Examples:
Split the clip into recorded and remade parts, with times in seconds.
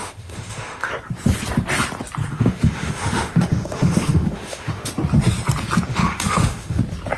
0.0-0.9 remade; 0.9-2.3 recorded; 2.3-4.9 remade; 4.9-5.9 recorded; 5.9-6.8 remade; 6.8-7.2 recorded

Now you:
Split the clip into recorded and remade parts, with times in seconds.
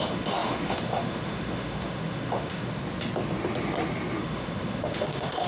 0.0-2.8 remade; 2.8-4.2 recorded; 4.2-5.5 remade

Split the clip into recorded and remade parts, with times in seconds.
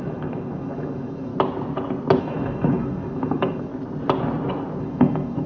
0.0-1.3 remade; 1.3-2.2 recorded; 2.2-3.7 remade; 3.7-4.8 recorded; 4.8-5.5 remade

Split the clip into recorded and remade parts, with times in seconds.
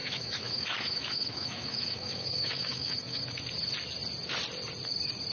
0.0-3.2 remade; 3.2-5.3 recorded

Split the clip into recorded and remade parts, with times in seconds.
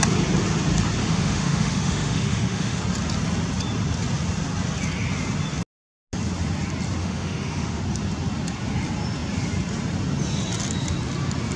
0.0-1.0 recorded; 1.0-2.8 remade; 2.8-7.0 recorded; 7.0-7.8 remade; 7.8-11.6 recorded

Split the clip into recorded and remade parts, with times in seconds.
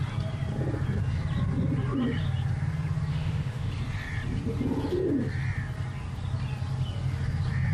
0.0-3.1 recorded; 3.1-3.7 remade; 3.7-7.7 recorded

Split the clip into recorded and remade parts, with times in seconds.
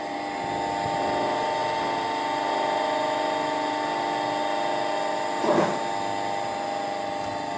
0.0-7.6 recorded